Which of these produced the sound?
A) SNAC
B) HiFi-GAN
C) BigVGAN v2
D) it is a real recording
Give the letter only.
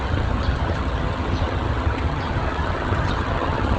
B